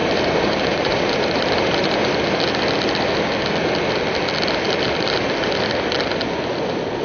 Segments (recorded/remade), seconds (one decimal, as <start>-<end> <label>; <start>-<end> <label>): 0.0-2.1 remade; 2.1-7.0 recorded